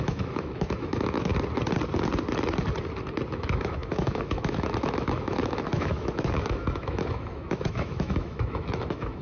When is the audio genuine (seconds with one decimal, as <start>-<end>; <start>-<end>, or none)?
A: 1.3-3.3